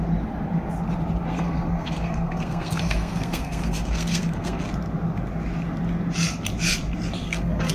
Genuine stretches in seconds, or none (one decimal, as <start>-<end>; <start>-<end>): 0.0-1.3; 4.6-7.2